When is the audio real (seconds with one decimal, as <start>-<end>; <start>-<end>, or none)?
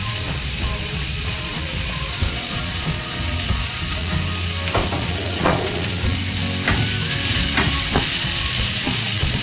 4.1-4.8; 6.2-7.8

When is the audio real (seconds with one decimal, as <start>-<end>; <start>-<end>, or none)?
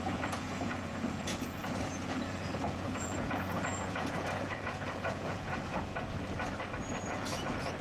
5.9-7.0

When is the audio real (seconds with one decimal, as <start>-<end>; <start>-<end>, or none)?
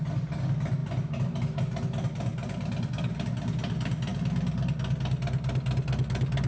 0.0-6.5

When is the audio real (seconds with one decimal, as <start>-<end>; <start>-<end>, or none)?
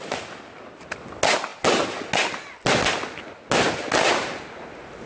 0.0-5.1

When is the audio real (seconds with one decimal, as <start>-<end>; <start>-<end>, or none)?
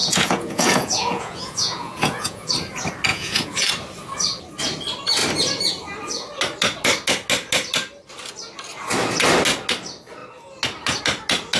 2.5-3.1; 3.7-11.6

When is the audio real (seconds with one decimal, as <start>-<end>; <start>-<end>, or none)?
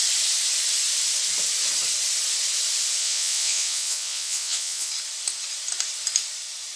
0.0-3.0; 4.9-6.8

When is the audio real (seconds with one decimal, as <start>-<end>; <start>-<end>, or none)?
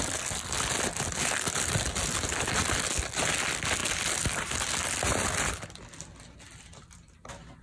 0.0-7.6